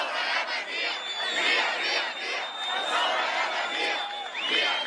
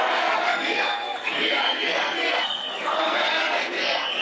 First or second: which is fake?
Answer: second